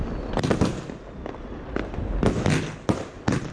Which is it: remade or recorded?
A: recorded